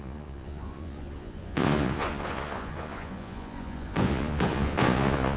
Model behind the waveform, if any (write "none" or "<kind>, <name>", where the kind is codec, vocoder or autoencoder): vocoder, Vocos